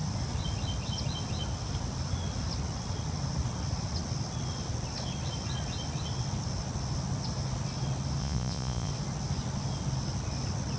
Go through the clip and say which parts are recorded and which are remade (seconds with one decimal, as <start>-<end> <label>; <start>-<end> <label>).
0.0-8.2 recorded; 8.2-8.9 remade; 8.9-10.8 recorded